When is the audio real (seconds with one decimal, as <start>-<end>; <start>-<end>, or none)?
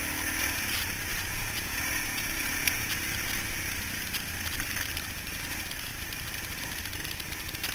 0.0-1.1; 2.9-7.7